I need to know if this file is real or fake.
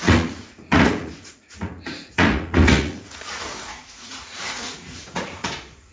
fake